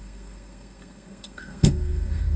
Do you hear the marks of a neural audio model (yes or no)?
yes